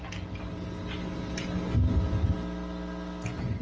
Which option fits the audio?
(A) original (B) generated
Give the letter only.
A